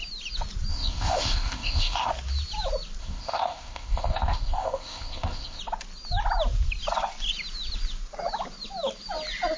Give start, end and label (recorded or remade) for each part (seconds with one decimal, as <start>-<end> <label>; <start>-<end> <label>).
0.0-0.7 recorded; 0.7-2.1 remade; 2.1-3.0 recorded; 3.0-5.6 remade; 5.6-9.6 recorded